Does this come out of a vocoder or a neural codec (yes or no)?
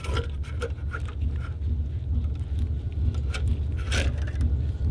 no